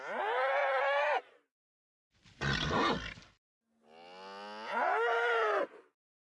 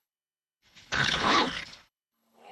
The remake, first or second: second